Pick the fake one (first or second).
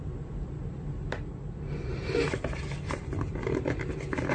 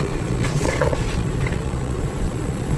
second